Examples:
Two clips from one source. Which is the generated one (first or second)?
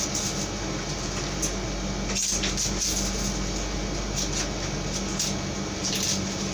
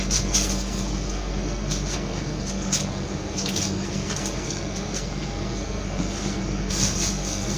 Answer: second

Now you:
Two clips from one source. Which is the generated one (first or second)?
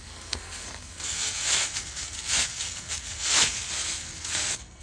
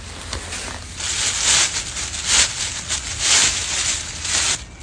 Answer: first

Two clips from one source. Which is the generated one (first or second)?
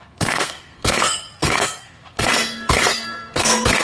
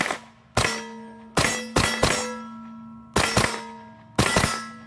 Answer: first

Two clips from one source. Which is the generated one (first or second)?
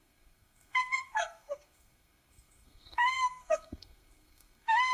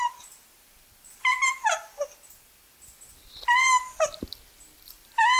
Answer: first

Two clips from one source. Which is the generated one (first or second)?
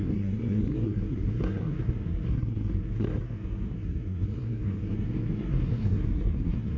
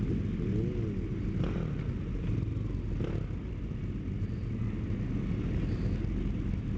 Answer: first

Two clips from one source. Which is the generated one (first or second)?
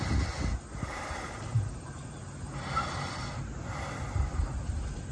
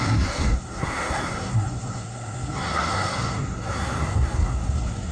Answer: second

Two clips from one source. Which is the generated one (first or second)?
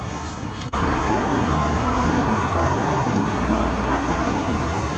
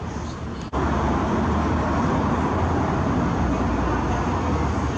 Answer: first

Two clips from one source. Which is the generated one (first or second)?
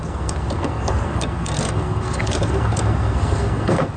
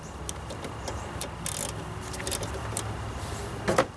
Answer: first